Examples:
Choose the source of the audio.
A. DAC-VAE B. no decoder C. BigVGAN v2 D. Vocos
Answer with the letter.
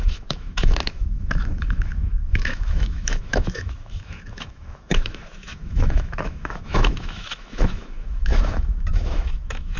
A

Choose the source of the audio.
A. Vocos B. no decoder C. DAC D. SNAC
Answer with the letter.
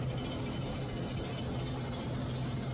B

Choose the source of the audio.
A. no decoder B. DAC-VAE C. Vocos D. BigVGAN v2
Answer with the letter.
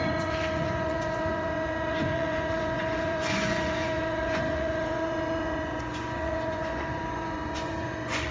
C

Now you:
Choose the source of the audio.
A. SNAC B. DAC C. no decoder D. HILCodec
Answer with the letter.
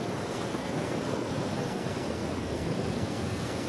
A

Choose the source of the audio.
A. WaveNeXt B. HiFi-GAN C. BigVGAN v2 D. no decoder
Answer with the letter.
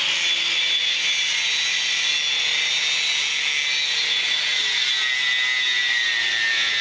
D